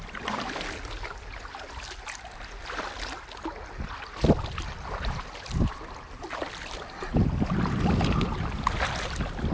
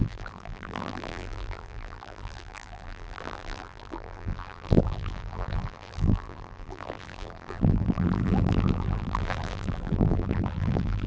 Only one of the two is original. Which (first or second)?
first